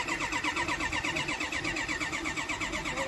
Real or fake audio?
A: real